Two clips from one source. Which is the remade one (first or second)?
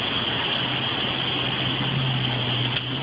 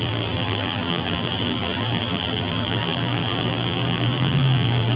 second